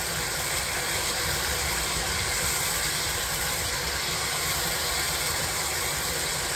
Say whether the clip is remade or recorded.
remade